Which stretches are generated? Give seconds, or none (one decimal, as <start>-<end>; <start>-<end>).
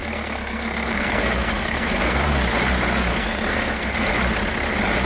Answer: 0.0-2.2; 3.1-4.1